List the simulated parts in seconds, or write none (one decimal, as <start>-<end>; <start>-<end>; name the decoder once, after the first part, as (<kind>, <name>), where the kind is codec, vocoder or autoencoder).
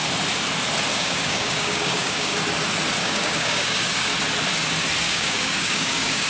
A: 0.9-2.3 (codec, DAC); 3.0-4.1; 5.0-6.3